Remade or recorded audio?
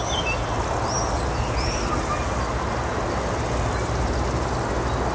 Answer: recorded